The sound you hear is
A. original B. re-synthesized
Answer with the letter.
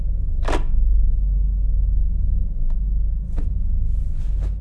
A